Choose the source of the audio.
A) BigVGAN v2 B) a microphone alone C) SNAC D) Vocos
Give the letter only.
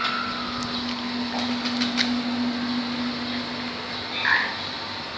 B